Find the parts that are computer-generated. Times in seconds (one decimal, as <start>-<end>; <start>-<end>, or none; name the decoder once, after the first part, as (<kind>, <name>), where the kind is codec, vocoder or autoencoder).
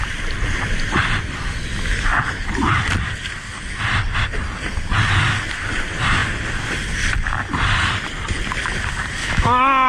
9.2-9.9 (autoencoder, DAC-VAE)